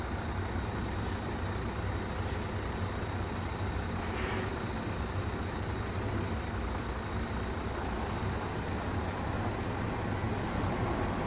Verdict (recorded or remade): recorded